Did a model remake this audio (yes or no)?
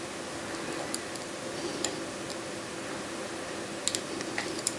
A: no